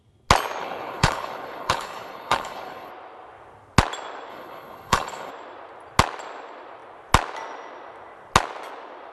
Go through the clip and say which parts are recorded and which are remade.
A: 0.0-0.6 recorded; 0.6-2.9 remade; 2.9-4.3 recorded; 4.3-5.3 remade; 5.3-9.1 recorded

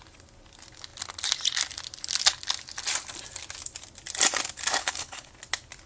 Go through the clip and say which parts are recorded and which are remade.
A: 0.0-4.8 recorded; 4.8-5.3 remade; 5.3-5.9 recorded

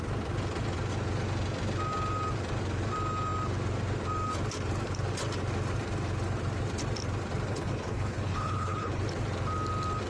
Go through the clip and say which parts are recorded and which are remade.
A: 0.0-7.5 recorded; 7.5-9.0 remade; 9.0-10.1 recorded

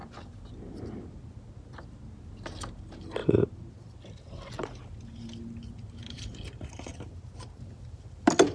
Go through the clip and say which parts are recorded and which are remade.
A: 0.0-8.5 recorded

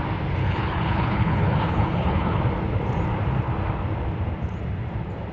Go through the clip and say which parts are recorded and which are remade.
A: 0.0-0.4 recorded; 0.4-2.4 remade; 2.4-5.3 recorded

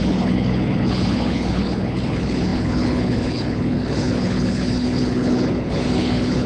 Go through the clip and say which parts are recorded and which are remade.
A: 0.0-6.5 remade

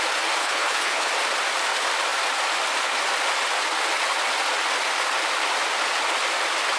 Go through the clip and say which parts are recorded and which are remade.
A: 0.0-0.4 recorded; 0.4-1.1 remade; 1.1-6.8 recorded